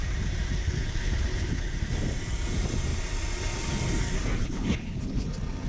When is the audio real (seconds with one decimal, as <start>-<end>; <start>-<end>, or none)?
0.0-0.6; 1.7-4.4; 5.3-5.7